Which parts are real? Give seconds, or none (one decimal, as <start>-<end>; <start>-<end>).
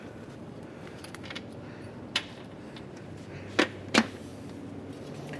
4.3-5.0